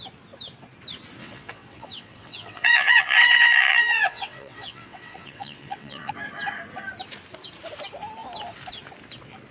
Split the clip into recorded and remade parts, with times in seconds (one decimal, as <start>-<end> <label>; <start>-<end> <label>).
0.0-1.2 recorded; 1.2-6.1 remade; 6.1-9.5 recorded